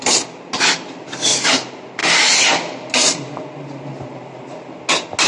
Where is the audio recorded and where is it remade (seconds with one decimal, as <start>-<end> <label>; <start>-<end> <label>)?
0.0-5.3 recorded